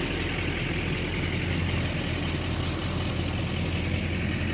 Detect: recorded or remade recorded